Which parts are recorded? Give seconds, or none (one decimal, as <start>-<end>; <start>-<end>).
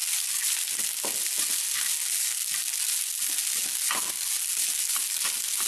0.0-5.7